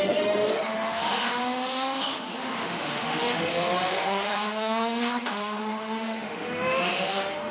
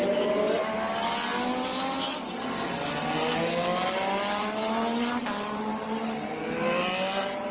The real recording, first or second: second